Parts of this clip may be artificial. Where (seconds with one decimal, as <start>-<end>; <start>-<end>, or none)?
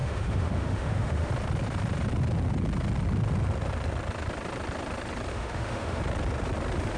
0.0-1.3; 5.3-6.0